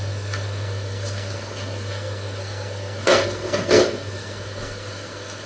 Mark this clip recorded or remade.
remade